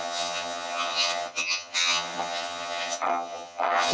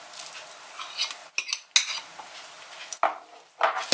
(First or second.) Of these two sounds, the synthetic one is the first